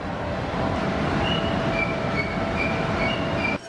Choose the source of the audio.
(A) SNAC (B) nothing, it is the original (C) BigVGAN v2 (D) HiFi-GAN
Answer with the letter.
B